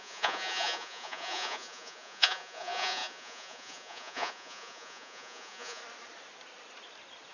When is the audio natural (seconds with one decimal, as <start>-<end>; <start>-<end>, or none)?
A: 5.8-7.3